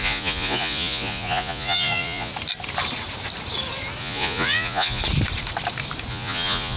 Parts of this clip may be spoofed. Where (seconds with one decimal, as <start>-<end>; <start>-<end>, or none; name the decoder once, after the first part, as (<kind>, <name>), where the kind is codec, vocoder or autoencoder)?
0.0-2.3 (vocoder, Vocos); 4.0-5.0; 6.1-6.8